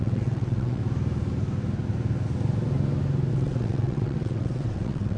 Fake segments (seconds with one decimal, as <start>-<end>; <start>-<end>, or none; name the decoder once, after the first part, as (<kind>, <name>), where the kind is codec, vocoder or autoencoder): 0.0-0.8 (vocoder, WaveNeXt); 3.3-5.2